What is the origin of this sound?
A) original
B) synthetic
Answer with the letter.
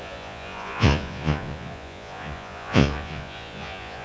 B